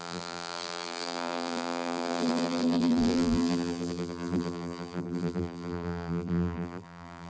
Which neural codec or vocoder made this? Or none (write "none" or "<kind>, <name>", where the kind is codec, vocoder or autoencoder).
vocoder, BigVGAN v2